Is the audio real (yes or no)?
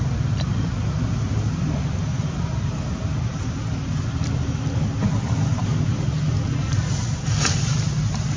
yes